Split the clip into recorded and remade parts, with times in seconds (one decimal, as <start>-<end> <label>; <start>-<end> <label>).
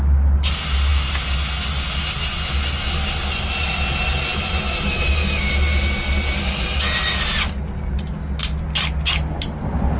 0.0-10.0 recorded